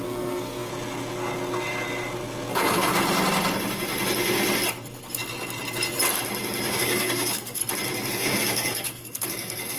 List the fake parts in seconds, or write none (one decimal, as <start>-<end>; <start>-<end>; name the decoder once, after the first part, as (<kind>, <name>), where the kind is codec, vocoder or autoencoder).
0.0-0.7 (codec, SNAC); 2.5-2.9; 6.7-7.6; 8.1-9.8